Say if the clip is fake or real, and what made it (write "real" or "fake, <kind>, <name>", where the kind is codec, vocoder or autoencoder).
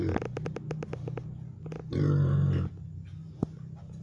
real